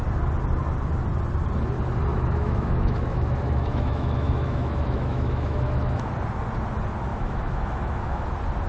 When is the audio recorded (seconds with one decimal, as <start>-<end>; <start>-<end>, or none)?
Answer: 0.0-2.1; 6.1-7.1; 8.2-8.7